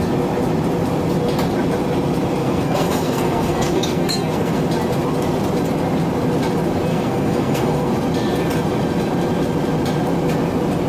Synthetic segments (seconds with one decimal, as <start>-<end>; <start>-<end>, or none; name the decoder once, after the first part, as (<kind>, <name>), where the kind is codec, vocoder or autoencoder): 2.4-4.6 (codec, SNAC); 6.9-7.9